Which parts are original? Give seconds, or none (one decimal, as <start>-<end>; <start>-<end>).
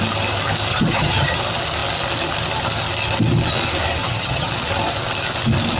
0.0-0.7; 1.4-4.0; 4.5-5.8